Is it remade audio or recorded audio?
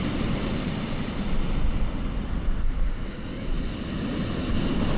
recorded